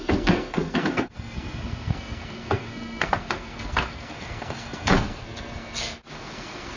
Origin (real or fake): fake